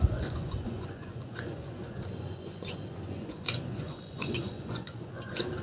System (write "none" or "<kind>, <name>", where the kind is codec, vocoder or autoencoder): vocoder, Vocos